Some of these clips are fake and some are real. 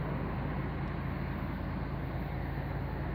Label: real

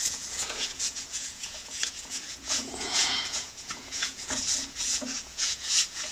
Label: fake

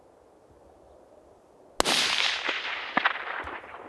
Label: real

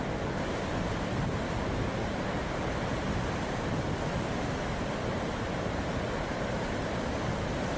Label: real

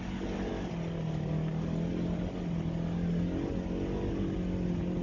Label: real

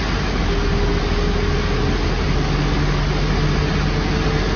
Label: real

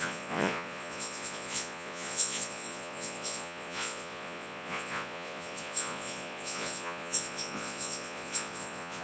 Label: fake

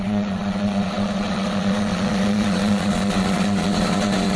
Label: fake